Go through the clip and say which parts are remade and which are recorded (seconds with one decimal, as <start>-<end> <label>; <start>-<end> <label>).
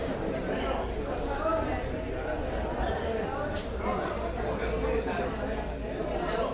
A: 0.0-6.5 recorded